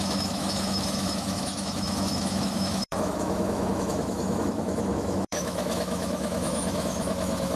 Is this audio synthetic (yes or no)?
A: yes